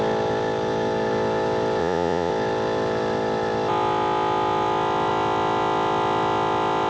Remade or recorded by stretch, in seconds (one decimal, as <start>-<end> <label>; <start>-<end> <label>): 0.0-1.8 recorded; 1.8-2.3 remade; 2.3-6.9 recorded